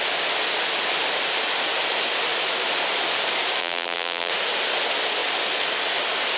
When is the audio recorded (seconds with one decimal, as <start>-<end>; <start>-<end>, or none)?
0.0-3.6; 4.3-6.4

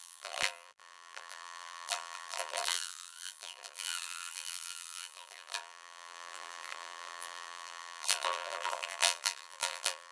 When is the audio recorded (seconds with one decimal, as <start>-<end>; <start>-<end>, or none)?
none

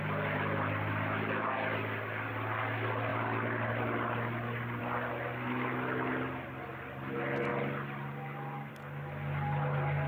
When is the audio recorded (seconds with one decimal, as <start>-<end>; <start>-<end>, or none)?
0.0-10.1

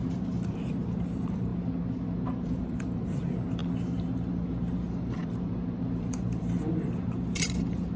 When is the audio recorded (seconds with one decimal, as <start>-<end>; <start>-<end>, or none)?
1.5-2.2; 3.6-4.3

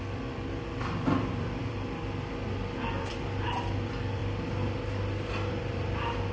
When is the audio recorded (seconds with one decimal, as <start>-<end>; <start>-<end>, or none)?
4.2-5.5

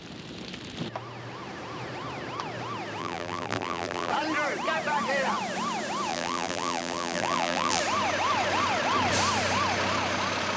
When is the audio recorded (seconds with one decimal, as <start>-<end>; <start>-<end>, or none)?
0.0-3.0; 4.1-6.1; 7.8-10.6